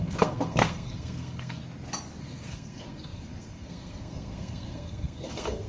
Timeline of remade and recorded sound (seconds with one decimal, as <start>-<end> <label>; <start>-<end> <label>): 0.0-1.6 remade; 1.6-2.2 recorded; 2.2-5.7 remade